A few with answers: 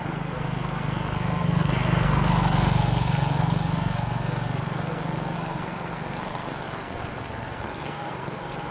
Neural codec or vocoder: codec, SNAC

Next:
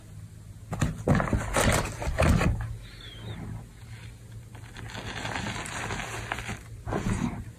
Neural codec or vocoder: none